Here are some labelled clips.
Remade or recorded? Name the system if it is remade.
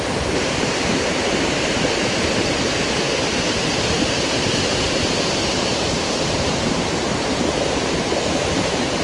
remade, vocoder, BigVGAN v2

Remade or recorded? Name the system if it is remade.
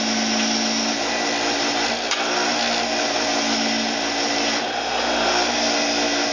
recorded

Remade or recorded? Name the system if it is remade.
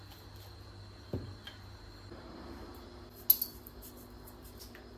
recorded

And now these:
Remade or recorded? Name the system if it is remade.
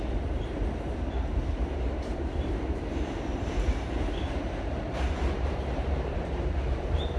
remade, vocoder, BigVGAN v2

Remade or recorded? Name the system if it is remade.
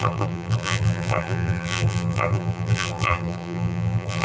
remade, vocoder, BigVGAN v2